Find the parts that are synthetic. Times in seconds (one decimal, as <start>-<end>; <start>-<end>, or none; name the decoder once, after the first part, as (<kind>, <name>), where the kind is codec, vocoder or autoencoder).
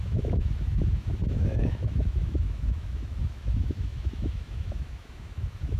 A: 0.0-5.8 (autoencoder, DAC-VAE)